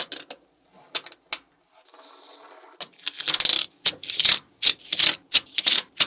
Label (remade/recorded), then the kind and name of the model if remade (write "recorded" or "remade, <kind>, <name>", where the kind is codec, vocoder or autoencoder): recorded